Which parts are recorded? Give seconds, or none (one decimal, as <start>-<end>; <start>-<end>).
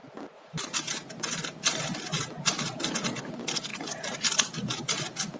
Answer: 0.0-5.4